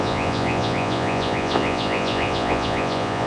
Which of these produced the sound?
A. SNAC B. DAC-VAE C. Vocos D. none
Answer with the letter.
C